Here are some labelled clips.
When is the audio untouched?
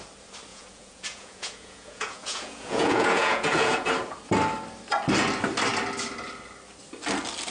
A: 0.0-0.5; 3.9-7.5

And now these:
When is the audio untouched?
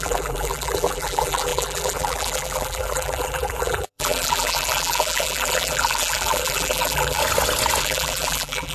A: 7.2-7.8